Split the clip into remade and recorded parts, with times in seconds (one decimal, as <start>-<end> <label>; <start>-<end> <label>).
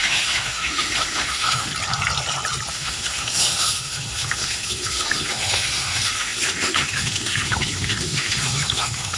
0.0-1.7 remade; 1.7-2.7 recorded; 2.7-9.2 remade